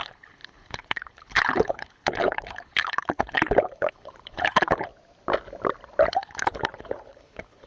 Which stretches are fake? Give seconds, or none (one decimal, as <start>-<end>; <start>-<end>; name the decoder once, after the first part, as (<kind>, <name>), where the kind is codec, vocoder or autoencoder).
0.0-4.9 (codec, HILCodec); 6.1-7.7